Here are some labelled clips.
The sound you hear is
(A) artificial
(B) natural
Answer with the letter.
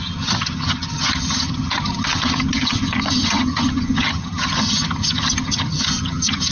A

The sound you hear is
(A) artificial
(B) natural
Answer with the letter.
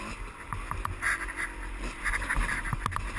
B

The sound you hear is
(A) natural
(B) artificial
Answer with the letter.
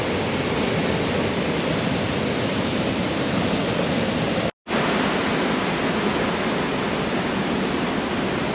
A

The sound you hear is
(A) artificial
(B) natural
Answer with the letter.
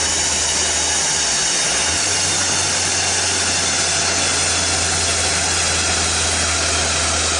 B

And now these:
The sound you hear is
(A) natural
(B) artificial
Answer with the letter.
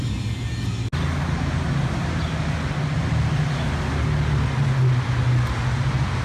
A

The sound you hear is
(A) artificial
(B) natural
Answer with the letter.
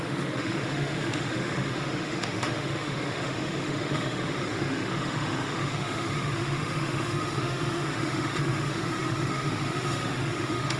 A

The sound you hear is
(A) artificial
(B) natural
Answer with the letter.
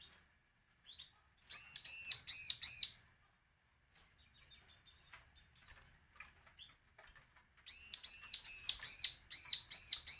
B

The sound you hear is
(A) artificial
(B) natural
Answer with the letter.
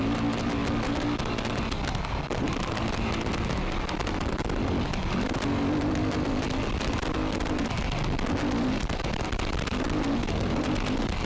B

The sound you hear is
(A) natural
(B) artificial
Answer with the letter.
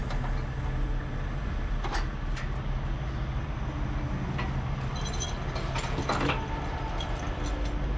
A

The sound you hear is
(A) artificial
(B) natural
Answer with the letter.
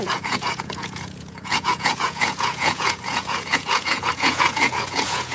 A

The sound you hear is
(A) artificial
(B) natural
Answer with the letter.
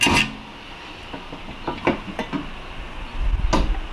B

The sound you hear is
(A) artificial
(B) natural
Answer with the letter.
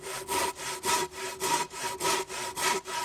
B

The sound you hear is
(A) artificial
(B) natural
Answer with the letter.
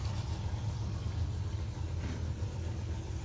B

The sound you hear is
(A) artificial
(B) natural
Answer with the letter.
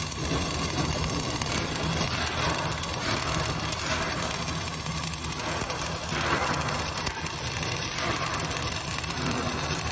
B